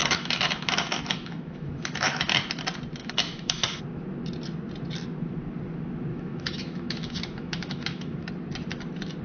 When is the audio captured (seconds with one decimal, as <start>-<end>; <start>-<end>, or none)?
2.4-3.0; 3.8-6.1; 8.3-9.2

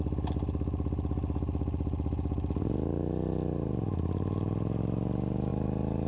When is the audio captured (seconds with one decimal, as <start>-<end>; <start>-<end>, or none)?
0.0-6.1

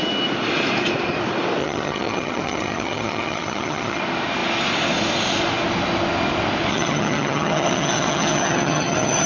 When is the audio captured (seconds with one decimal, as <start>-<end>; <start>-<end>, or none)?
0.0-1.6; 4.0-6.7